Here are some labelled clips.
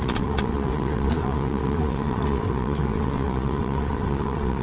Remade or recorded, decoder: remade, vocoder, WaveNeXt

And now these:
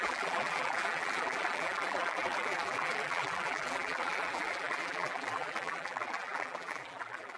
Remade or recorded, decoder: remade, vocoder, BigVGAN v2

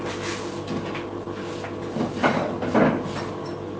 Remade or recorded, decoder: recorded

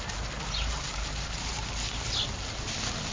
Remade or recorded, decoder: recorded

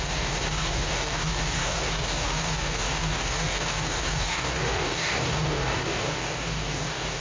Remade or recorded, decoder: remade, codec, DAC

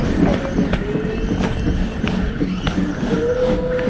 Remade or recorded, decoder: recorded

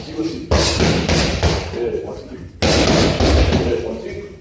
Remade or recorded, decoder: recorded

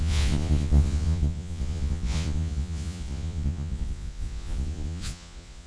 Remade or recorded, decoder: remade, vocoder, Vocos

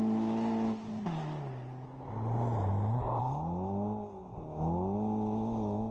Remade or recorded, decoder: recorded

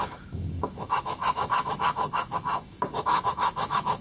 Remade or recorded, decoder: remade, autoencoder, DAC-VAE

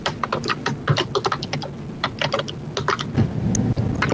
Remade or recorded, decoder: recorded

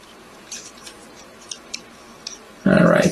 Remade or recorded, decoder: remade, vocoder, BigVGAN v2